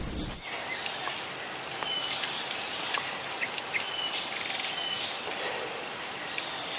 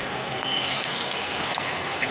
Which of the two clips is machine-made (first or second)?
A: second